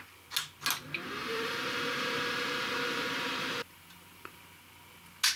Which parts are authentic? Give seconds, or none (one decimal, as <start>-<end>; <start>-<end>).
0.0-1.2; 4.4-5.4